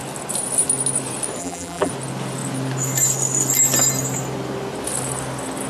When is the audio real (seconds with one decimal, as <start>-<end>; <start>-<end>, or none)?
0.0-1.4; 1.9-5.7